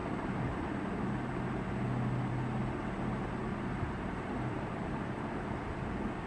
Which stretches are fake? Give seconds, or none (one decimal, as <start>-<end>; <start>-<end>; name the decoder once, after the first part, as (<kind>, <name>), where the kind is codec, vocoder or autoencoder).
3.5-6.3 (vocoder, BigVGAN v2)